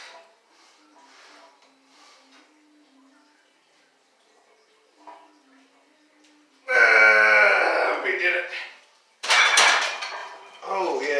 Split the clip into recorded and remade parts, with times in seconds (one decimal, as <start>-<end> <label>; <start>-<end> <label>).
0.0-8.1 recorded; 8.1-9.6 remade; 9.6-10.2 recorded; 10.2-11.2 remade